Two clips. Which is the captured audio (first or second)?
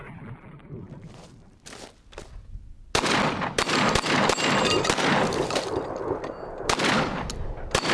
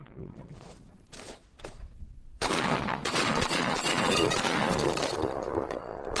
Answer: first